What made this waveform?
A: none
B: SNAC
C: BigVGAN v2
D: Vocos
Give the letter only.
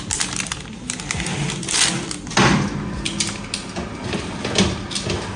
A